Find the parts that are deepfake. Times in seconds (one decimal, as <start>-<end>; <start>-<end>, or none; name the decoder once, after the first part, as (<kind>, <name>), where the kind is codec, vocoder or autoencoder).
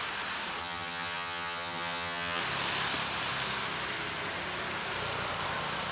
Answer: 0.6-2.4 (vocoder, HiFi-GAN)